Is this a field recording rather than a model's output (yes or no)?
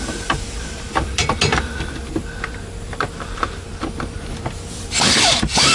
no